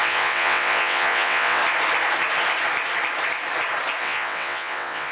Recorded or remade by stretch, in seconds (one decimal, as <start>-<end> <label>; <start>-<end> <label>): 0.0-1.6 remade; 1.6-4.0 recorded; 4.0-5.1 remade